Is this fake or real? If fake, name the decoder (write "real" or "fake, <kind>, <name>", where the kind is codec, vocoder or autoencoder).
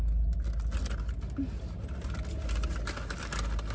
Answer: real